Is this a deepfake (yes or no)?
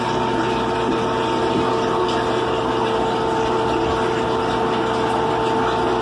no